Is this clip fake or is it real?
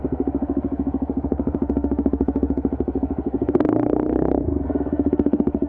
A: fake